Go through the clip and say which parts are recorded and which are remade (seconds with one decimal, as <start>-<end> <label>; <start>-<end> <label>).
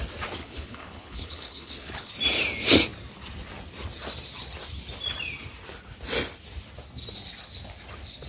0.0-0.4 recorded; 0.4-2.1 remade; 2.1-8.3 recorded